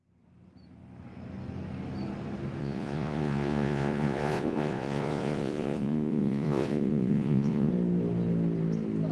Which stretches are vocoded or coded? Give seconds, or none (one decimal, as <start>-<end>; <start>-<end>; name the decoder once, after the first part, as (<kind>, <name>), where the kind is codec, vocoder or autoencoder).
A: 2.6-7.7 (vocoder, Vocos)